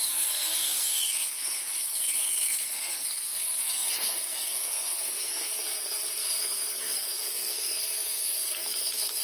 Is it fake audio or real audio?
fake